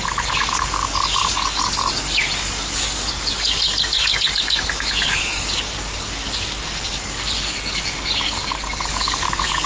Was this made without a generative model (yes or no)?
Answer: no